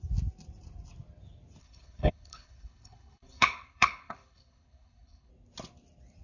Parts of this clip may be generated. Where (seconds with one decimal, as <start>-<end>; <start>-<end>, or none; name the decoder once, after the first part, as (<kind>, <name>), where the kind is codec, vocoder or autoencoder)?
1.6-5.3 (codec, HILCodec)